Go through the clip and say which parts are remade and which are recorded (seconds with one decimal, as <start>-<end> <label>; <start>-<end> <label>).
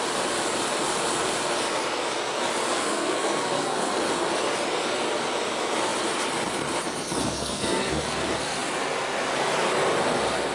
0.0-2.7 recorded; 2.7-3.9 remade; 3.9-7.2 recorded; 7.2-8.0 remade; 8.0-10.5 recorded